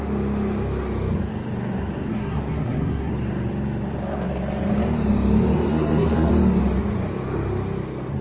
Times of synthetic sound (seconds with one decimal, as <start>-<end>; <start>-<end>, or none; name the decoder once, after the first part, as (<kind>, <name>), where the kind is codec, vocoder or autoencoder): 2.1-3.1 (codec, SNAC); 5.7-6.3